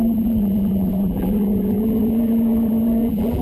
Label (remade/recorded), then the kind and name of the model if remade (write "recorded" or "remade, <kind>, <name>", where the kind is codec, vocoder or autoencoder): remade, vocoder, BigVGAN v2